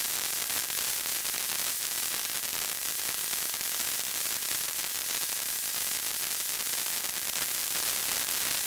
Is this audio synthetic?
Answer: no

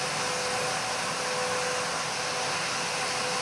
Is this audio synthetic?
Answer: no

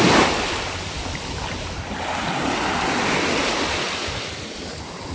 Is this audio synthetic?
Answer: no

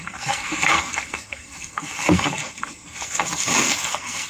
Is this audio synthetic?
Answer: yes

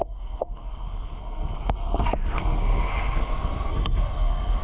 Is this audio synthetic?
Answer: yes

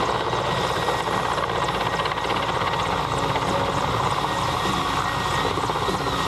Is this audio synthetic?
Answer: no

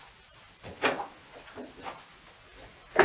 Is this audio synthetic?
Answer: no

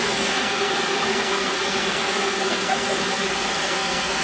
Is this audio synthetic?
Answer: yes